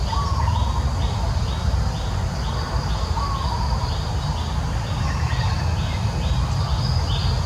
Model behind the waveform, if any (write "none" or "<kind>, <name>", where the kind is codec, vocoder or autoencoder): none